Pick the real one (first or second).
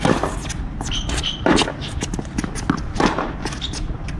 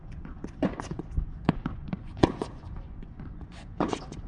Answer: first